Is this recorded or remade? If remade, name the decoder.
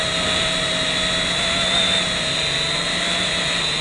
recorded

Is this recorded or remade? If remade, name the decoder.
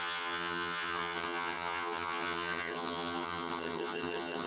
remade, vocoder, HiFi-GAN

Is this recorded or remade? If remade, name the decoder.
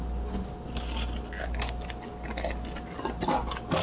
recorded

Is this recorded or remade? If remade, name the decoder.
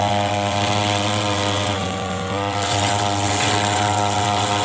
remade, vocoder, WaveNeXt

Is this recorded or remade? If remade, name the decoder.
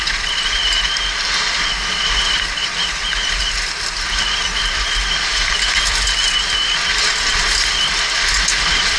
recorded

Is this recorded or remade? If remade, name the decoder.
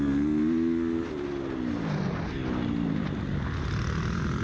recorded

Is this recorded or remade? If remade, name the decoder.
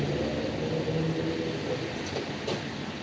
recorded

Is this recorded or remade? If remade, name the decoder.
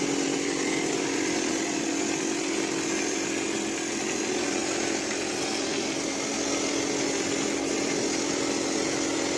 recorded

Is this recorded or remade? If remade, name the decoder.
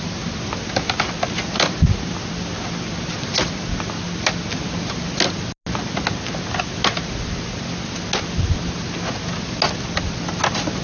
recorded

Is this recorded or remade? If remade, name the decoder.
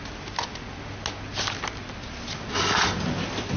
recorded